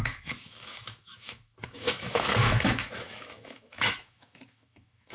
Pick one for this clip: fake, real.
fake